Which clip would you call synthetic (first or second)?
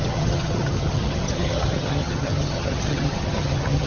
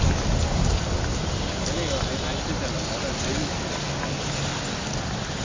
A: first